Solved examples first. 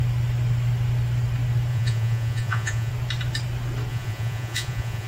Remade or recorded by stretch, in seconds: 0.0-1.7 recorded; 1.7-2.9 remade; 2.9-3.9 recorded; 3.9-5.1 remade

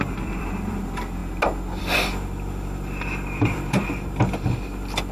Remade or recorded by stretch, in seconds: 0.0-1.2 remade; 1.2-1.8 recorded; 1.8-5.1 remade

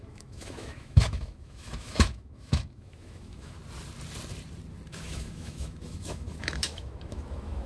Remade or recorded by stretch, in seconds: 0.0-3.6 remade; 3.6-4.9 recorded; 4.9-7.7 remade